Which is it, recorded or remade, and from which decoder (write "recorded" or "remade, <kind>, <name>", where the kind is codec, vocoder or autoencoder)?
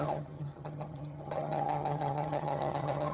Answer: remade, vocoder, HiFi-GAN